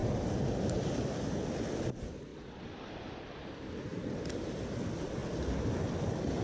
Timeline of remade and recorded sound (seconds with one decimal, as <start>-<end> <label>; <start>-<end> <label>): 0.0-2.3 recorded; 2.3-3.2 remade; 3.2-5.2 recorded; 5.2-6.0 remade; 6.0-6.4 recorded